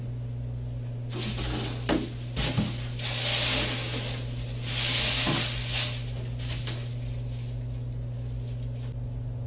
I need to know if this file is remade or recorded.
recorded